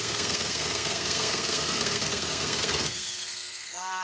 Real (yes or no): no